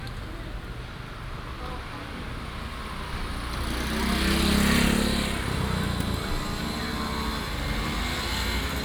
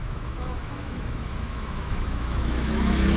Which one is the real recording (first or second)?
first